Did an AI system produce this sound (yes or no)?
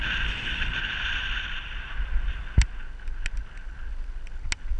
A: no